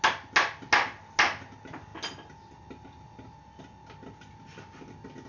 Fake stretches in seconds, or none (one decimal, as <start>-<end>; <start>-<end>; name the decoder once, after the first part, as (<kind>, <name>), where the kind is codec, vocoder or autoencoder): none